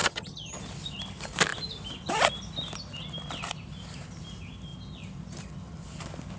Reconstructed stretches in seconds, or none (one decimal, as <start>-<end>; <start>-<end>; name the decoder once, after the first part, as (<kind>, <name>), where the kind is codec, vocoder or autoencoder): 0.0-0.6 (vocoder, HiFi-GAN)